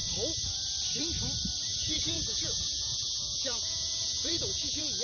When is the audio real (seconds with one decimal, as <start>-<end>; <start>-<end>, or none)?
0.0-1.7